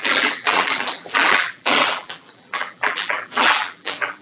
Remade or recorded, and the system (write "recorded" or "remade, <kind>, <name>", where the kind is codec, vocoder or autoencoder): remade, vocoder, BigVGAN v2